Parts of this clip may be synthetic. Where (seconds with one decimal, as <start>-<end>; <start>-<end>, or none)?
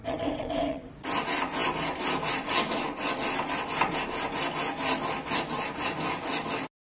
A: 0.0-0.9